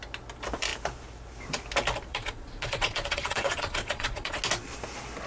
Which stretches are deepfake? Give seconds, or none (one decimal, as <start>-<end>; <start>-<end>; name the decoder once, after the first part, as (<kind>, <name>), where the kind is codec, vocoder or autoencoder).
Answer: 2.1-4.4 (vocoder, Vocos)